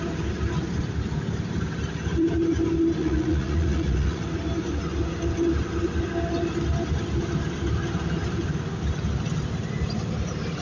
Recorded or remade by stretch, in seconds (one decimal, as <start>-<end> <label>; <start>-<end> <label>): 0.0-3.0 recorded; 3.0-4.2 remade; 4.2-10.6 recorded